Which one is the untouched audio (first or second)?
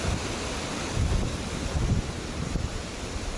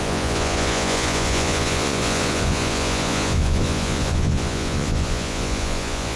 first